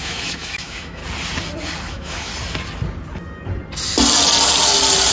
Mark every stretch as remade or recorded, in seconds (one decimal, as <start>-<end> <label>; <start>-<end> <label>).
0.0-1.0 remade; 1.0-1.9 recorded; 1.9-2.3 remade; 2.3-5.1 recorded

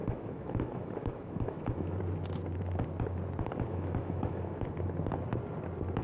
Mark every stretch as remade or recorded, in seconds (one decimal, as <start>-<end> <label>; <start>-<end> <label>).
0.0-2.0 remade; 2.0-3.7 recorded; 3.7-4.6 remade; 4.6-6.0 recorded

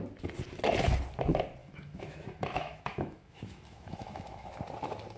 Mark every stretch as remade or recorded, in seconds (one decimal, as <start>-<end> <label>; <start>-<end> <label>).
0.0-1.6 recorded; 1.6-4.5 remade; 4.5-5.2 recorded

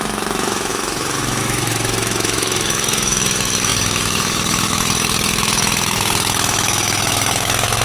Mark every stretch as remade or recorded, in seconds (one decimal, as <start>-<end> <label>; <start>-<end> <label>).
0.0-7.8 remade

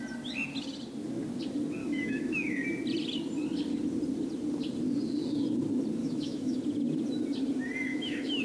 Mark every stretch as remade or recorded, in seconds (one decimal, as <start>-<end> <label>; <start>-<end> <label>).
0.0-1.8 recorded; 1.8-2.5 remade; 2.5-6.0 recorded; 6.0-6.6 remade; 6.6-7.9 recorded; 7.9-8.4 remade